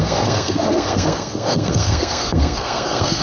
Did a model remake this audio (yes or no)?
yes